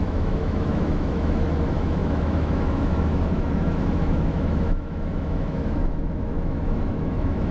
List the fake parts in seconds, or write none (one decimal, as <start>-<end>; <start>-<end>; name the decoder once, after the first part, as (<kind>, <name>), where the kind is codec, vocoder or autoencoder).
0.0-7.5 (autoencoder, DAC-VAE)